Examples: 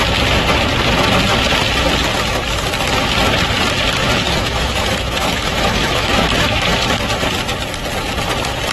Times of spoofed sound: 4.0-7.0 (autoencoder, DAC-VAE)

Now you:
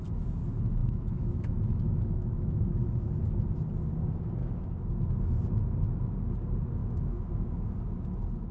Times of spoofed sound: 0.8-3.2 (autoencoder, DAC-VAE); 4.4-4.9; 6.8-7.7

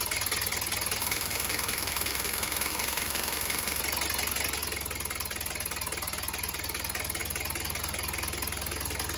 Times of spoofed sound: 1.0-3.8 (autoencoder, DAC-VAE)

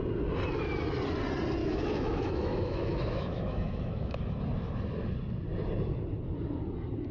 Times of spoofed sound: 1.6-4.2 (autoencoder, DAC-VAE)